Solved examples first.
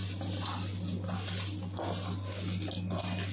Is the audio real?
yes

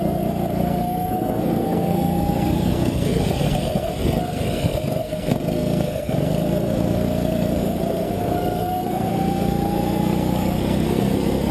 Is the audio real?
no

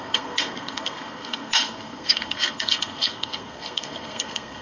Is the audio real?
no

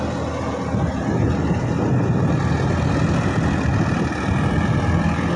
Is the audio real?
yes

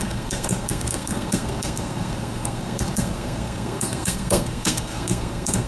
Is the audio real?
no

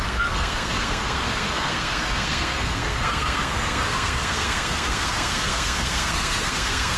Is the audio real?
no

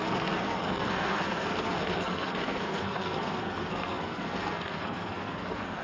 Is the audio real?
no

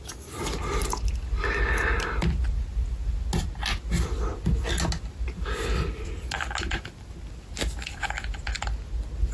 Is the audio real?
yes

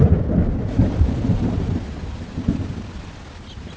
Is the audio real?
yes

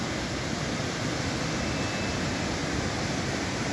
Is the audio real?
yes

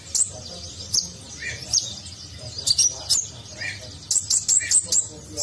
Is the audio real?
yes